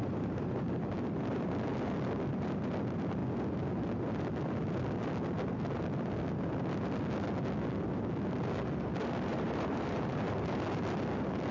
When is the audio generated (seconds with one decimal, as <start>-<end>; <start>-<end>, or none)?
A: 0.0-0.6; 9.3-10.3